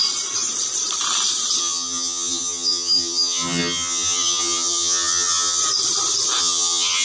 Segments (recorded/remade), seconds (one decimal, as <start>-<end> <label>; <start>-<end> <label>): 0.0-1.6 recorded; 1.6-5.6 remade; 5.6-6.4 recorded; 6.4-7.0 remade